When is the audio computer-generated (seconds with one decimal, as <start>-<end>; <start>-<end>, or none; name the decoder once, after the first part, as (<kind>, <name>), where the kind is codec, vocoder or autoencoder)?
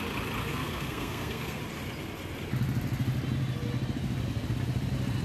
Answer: 0.5-1.6 (codec, SNAC)